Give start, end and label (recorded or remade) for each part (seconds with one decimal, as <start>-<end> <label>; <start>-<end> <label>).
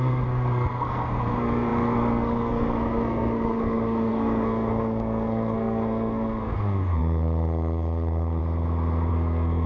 0.0-8.4 remade; 8.4-9.1 recorded; 9.1-9.7 remade